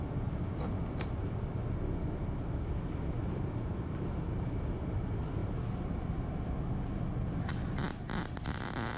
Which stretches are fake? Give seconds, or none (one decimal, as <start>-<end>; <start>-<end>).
none